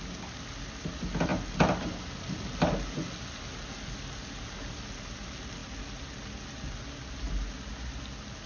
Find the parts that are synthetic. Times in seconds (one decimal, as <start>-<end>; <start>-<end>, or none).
none